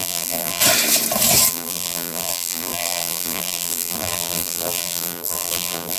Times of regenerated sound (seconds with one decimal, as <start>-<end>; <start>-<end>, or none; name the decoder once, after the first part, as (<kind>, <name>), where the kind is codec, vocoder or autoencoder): 0.0-0.6 (vocoder, BigVGAN v2); 1.5-6.0